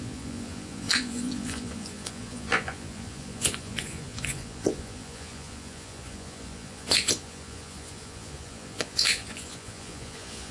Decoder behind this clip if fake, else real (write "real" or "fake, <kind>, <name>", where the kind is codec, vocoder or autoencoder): fake, vocoder, Vocos